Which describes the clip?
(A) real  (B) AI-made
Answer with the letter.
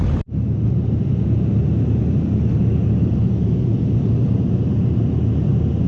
B